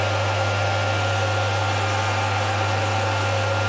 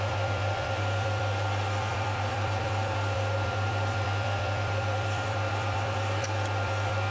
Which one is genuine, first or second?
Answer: first